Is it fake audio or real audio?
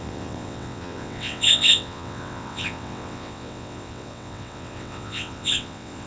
fake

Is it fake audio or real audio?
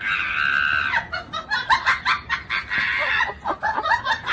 real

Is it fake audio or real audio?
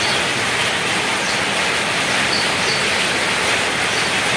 real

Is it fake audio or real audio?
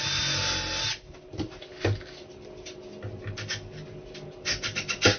real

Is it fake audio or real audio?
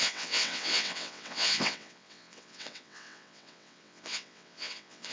fake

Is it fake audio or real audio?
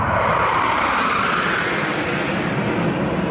real